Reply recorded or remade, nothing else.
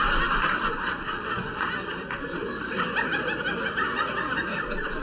recorded